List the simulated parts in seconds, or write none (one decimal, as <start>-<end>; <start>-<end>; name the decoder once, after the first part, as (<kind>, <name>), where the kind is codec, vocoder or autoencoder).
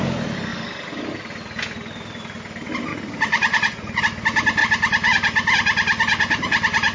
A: 2.9-4.0 (vocoder, Vocos)